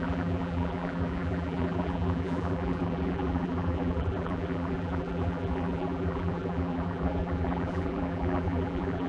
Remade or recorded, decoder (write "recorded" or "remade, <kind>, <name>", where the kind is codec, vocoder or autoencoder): remade, vocoder, BigVGAN v2